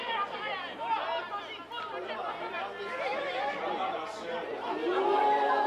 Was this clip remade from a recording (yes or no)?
no